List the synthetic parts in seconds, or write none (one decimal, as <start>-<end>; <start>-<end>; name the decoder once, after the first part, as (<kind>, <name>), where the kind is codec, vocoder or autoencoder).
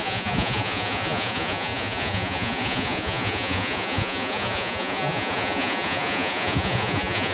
0.0-7.3 (vocoder, Vocos)